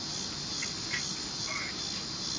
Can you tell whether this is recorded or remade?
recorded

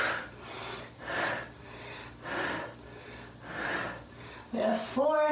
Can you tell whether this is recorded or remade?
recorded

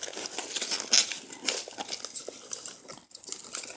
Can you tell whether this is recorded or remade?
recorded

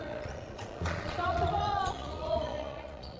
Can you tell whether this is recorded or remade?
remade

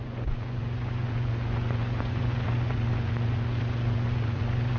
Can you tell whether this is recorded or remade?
remade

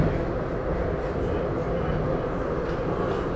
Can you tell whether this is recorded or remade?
recorded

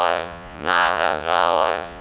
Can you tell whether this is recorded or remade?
remade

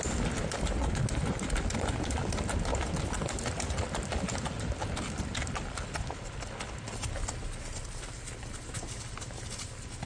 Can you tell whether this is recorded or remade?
recorded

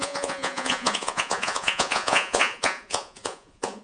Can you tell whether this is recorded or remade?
remade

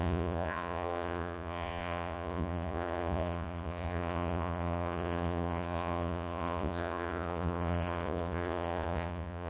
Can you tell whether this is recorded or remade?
remade